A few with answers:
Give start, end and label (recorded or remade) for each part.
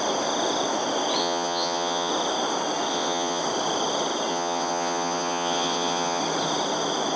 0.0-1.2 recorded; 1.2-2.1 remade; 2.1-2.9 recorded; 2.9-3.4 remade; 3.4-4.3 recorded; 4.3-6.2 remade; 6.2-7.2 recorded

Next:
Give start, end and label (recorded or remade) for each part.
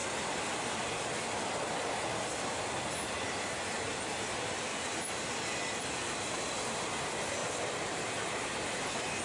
0.0-9.2 recorded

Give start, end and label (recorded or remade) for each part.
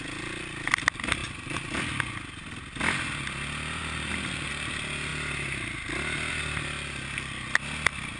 0.0-1.2 recorded; 1.2-1.8 remade; 1.8-8.2 recorded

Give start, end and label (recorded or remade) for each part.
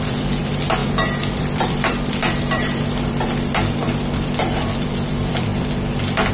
0.0-6.3 remade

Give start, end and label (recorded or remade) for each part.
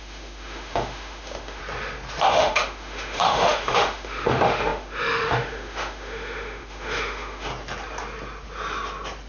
0.0-1.6 remade; 1.6-2.3 recorded; 2.3-7.5 remade; 7.5-9.3 recorded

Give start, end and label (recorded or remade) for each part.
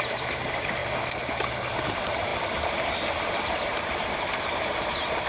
0.0-0.8 remade; 0.8-1.7 recorded; 1.7-5.3 remade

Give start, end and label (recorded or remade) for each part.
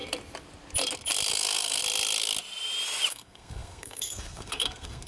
0.0-1.3 recorded; 1.3-1.8 remade; 1.8-3.1 recorded; 3.1-5.1 remade